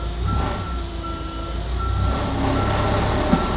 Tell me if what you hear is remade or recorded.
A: recorded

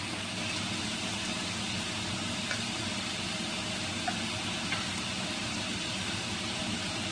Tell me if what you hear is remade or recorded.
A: recorded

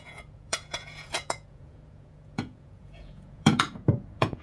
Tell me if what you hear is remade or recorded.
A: remade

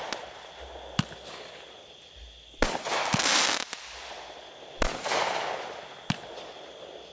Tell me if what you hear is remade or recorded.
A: recorded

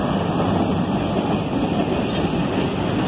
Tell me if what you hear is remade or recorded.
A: recorded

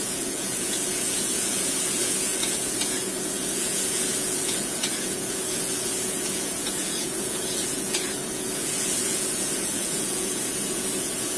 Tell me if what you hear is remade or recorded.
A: remade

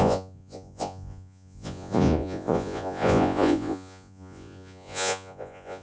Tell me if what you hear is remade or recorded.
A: remade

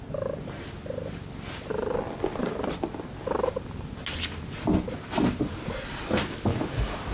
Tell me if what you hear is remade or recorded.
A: recorded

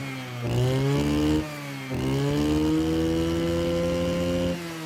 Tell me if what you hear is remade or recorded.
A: recorded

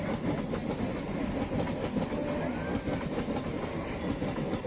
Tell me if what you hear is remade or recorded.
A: recorded